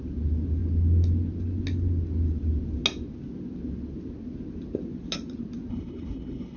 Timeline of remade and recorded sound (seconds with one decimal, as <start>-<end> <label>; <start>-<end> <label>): 0.0-5.7 recorded; 5.7-6.6 remade